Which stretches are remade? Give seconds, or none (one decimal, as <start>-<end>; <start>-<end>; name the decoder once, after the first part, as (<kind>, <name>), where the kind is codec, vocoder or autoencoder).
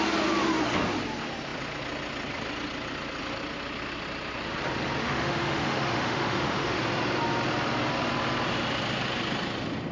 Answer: 5.0-6.8 (autoencoder, DAC-VAE)